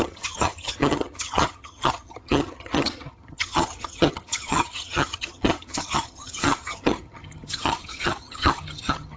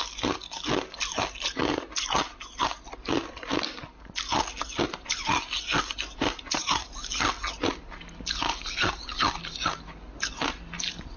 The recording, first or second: second